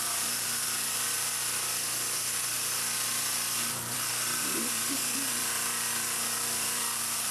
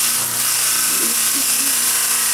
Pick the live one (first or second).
second